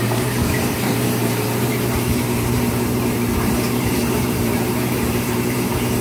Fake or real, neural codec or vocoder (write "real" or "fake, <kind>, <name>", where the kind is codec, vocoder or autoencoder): fake, vocoder, BigVGAN v2